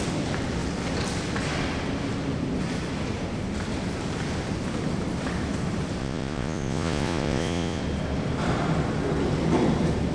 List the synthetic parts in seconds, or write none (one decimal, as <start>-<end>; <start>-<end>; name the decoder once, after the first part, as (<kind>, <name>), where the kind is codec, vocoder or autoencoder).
6.0-7.8 (vocoder, Vocos)